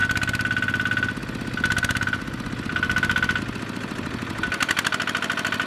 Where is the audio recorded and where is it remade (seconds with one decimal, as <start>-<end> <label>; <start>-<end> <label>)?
0.0-5.7 recorded